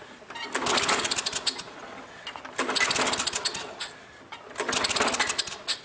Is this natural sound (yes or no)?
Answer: yes